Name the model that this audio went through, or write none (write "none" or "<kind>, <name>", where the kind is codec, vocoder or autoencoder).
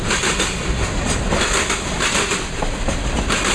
none